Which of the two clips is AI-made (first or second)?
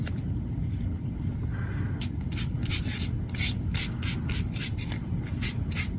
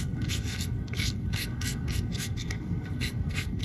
second